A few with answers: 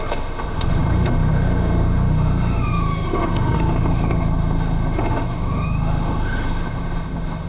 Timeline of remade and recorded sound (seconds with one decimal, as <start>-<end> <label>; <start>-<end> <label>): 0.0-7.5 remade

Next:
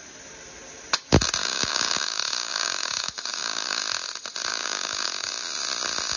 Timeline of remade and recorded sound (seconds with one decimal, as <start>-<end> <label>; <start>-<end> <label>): 0.0-1.4 recorded; 1.4-3.8 remade; 3.8-4.5 recorded; 4.5-5.3 remade; 5.3-6.2 recorded

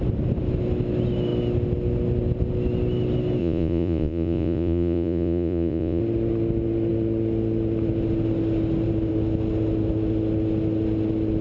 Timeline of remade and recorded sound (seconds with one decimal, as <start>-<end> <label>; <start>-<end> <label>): 0.0-3.4 recorded; 3.4-6.0 remade; 6.0-11.4 recorded